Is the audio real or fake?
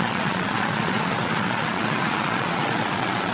fake